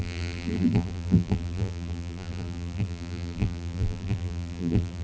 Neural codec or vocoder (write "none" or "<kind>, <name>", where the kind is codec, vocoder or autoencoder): vocoder, BigVGAN v2